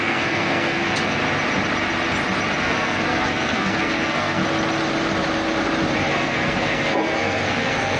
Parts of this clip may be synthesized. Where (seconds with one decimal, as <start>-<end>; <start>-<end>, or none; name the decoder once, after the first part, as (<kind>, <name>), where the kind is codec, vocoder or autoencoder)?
0.0-1.2 (codec, SNAC); 2.6-4.4; 6.1-8.0